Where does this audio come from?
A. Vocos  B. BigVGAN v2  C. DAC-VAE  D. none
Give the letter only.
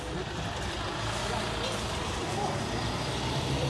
B